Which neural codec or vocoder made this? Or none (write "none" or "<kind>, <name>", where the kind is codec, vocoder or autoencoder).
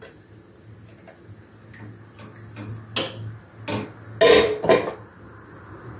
none